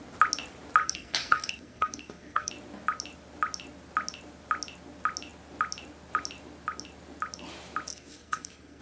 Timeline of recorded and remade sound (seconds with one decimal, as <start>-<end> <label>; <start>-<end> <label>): 0.0-0.8 recorded; 0.8-2.5 remade; 2.5-7.9 recorded; 7.9-8.8 remade